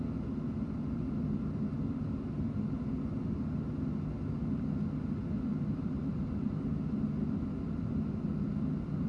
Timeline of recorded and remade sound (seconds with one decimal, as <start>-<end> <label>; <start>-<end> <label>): 0.0-5.5 recorded; 5.5-6.3 remade; 6.3-9.1 recorded